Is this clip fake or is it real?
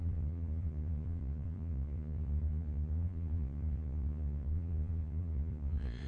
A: fake